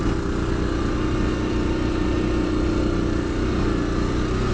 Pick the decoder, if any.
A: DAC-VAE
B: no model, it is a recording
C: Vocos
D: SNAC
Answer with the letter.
B